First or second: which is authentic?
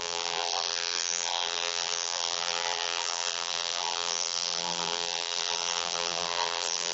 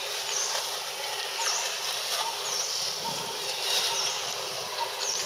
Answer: second